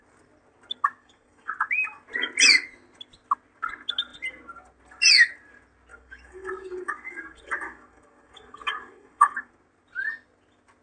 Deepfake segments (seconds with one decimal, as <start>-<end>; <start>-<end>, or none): 1.0-1.5; 5.9-9.5